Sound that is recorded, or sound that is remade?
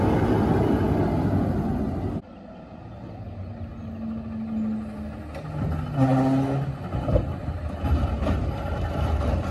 recorded